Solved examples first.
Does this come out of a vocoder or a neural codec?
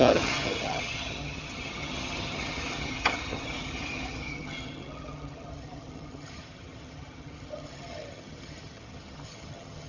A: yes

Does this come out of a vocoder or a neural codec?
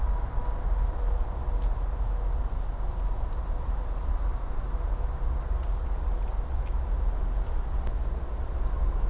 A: no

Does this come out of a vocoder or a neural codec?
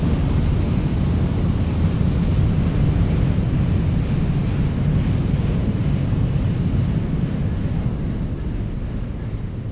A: no